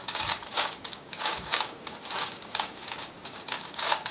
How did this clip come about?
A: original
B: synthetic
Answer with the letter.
B